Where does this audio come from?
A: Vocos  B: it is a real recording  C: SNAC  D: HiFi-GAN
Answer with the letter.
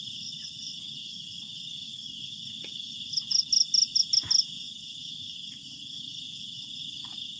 B